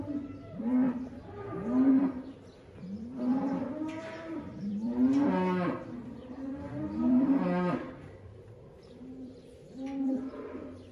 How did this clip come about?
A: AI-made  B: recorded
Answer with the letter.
A